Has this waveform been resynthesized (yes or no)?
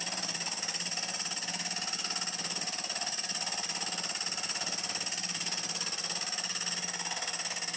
no